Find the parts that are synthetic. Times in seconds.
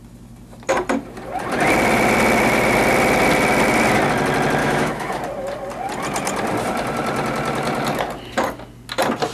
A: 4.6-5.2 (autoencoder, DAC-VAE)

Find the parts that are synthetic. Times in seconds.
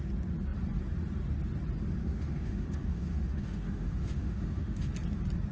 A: 2.0-4.9 (autoencoder, DAC-VAE)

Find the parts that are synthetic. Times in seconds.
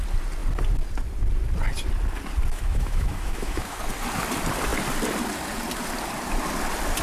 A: 2.5-3.8 (autoencoder, DAC-VAE)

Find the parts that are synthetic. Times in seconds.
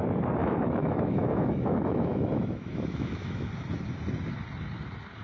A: 0.4-3.5 (autoencoder, DAC-VAE)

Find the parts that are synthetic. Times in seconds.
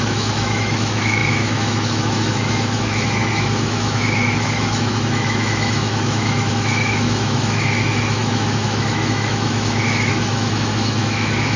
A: 0.0-11.6 (autoencoder, DAC-VAE)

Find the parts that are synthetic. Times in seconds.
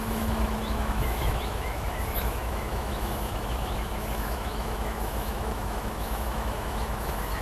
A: 0.0-7.4 (autoencoder, DAC-VAE)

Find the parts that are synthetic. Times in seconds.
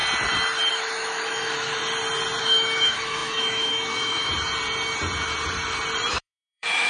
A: 0.7-1.8 (autoencoder, DAC-VAE); 2.4-4.3; 6.1-6.9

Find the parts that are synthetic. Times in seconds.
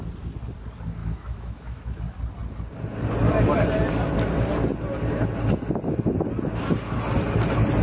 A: 1.0-2.0 (autoencoder, DAC-VAE)